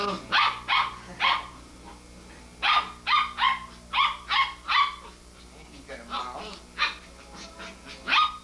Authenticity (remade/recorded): recorded